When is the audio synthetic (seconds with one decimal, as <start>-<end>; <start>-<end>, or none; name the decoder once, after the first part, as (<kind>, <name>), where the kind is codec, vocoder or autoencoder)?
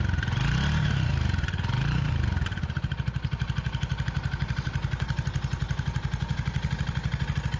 none